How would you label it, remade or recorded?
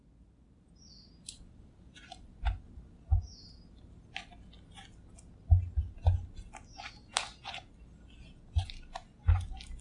recorded